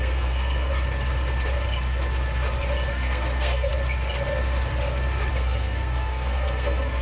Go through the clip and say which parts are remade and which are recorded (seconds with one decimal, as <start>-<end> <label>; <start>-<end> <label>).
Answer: 0.0-0.7 remade; 0.7-2.9 recorded; 2.9-3.7 remade; 3.7-5.3 recorded; 5.3-7.0 remade